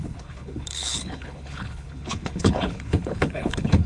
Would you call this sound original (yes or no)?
no